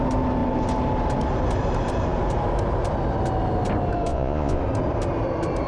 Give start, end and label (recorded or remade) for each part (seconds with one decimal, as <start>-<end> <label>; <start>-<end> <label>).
0.0-4.1 recorded; 4.1-4.6 remade; 4.6-5.7 recorded